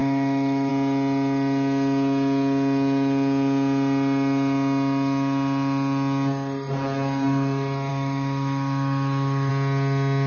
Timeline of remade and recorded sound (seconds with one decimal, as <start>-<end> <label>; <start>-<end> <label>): 0.0-0.7 remade; 0.7-7.9 recorded; 7.9-9.5 remade; 9.5-10.3 recorded